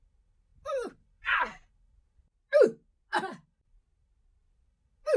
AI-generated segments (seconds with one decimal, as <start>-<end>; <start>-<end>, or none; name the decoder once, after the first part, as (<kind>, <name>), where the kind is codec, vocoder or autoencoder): 0.0-1.6 (vocoder, BigVGAN v2); 3.2-5.2